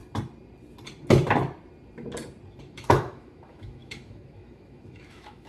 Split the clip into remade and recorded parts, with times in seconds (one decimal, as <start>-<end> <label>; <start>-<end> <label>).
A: 0.0-2.6 recorded; 2.6-5.5 remade